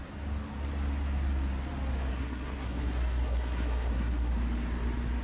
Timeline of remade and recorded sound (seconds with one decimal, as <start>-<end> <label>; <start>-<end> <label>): 0.0-2.1 recorded; 2.1-4.3 remade; 4.3-5.2 recorded